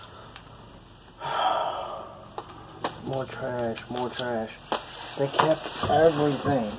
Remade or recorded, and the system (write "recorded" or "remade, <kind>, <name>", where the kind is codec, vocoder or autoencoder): recorded